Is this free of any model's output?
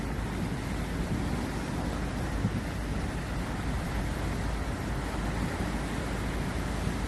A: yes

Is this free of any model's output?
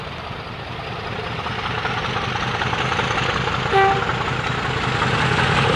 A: yes